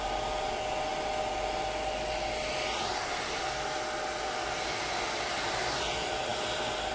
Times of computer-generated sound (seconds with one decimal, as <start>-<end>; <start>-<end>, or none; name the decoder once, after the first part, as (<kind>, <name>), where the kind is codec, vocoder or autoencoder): none